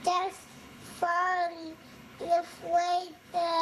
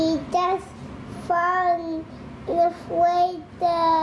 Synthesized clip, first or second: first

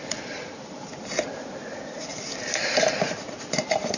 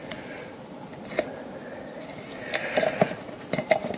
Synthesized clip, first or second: first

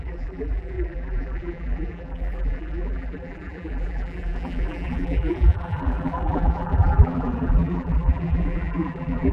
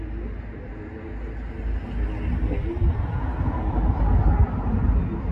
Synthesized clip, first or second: first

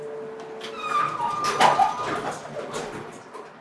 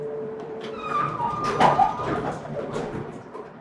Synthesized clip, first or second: second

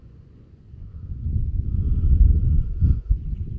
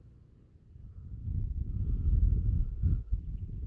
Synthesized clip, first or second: first